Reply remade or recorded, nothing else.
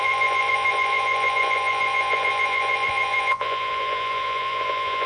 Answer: remade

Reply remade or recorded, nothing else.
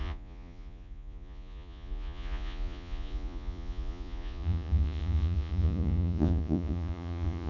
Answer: remade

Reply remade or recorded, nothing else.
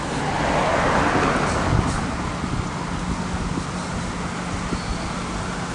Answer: recorded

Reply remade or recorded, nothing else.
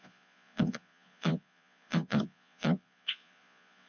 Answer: remade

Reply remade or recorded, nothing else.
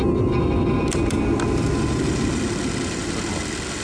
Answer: recorded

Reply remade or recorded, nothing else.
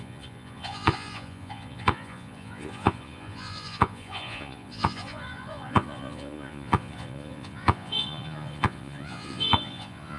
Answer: remade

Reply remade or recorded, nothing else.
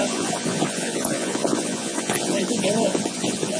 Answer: remade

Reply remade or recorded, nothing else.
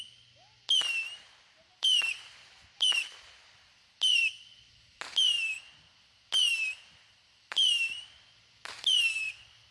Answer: recorded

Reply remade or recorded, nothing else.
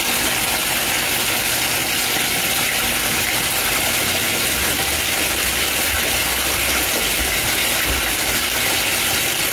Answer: recorded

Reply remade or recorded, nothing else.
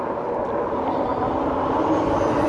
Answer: recorded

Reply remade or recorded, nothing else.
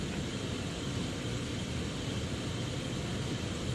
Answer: recorded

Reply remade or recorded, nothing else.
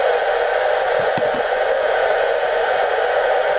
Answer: remade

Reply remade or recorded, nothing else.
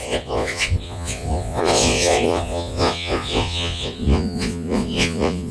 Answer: remade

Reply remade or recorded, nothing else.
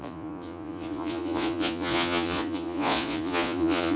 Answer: remade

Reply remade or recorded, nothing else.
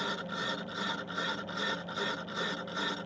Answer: recorded